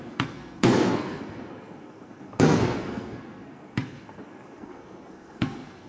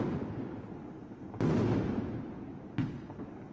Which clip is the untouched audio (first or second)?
second